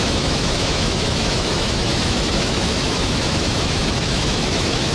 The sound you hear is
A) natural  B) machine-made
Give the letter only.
B